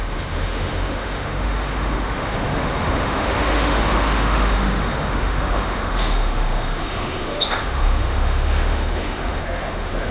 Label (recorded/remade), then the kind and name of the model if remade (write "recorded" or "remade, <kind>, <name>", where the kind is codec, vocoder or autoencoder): remade, autoencoder, DAC-VAE